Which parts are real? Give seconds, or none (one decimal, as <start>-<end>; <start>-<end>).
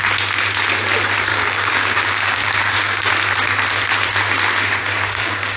0.0-1.3; 3.1-4.8